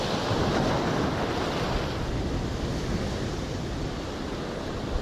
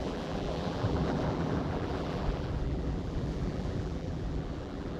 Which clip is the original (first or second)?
first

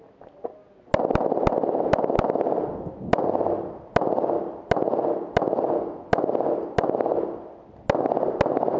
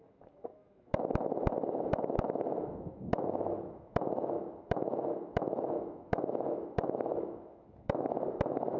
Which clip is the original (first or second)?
first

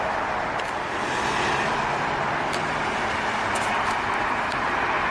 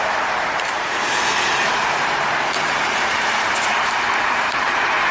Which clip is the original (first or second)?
first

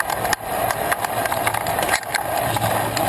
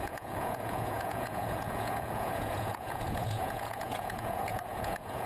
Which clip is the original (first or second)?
first